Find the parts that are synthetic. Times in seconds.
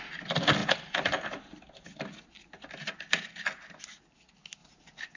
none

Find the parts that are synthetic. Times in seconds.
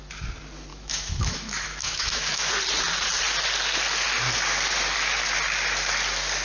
0.7-2.5 (autoencoder, DAC-VAE)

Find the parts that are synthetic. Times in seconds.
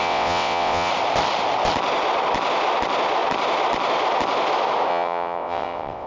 0.0-0.9 (vocoder, WaveNeXt); 4.9-6.1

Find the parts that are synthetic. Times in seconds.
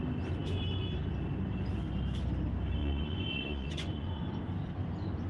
2.8-4.2 (vocoder, Vocos)